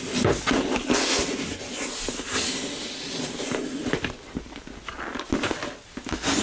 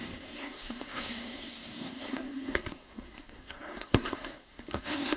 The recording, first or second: first